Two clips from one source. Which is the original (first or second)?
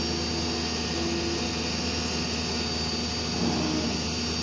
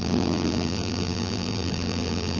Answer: first